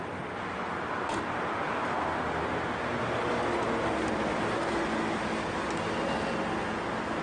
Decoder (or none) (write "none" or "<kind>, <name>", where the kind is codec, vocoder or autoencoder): none